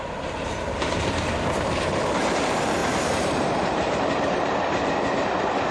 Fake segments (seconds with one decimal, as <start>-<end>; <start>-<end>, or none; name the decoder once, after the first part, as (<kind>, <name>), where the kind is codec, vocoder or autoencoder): 2.8-4.5 (vocoder, BigVGAN v2)